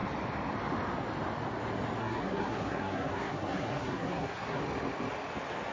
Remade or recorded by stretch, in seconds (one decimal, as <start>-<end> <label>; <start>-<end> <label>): 0.0-2.0 recorded; 2.0-4.6 remade; 4.6-5.7 recorded